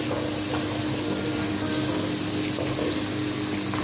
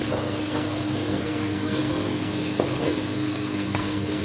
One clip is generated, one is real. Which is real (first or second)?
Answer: first